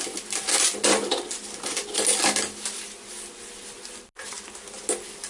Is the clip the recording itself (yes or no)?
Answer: yes